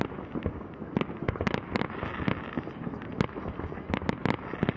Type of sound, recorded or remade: recorded